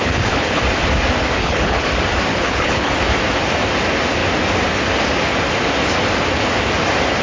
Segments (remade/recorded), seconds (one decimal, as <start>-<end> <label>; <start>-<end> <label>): 0.0-0.6 remade; 0.6-1.4 recorded; 1.4-1.9 remade; 1.9-2.3 recorded; 2.3-2.9 remade; 2.9-7.2 recorded